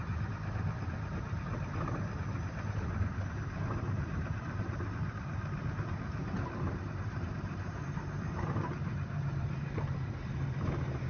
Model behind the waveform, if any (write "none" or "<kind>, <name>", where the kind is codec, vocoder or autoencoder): vocoder, BigVGAN v2